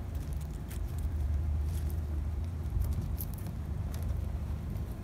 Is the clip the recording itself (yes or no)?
no